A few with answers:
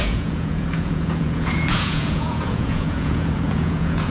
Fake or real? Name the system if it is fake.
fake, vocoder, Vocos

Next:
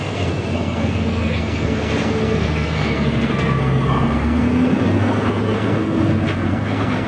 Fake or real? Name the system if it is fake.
fake, codec, SNAC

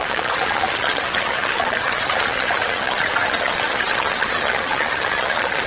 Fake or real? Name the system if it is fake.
fake, vocoder, Vocos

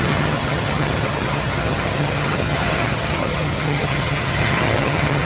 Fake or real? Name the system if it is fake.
fake, vocoder, HiFi-GAN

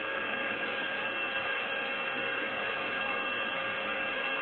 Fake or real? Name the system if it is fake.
fake, codec, SNAC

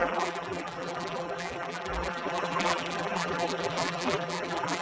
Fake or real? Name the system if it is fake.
fake, vocoder, BigVGAN v2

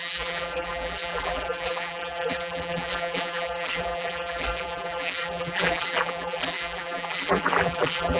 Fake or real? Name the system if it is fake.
fake, vocoder, BigVGAN v2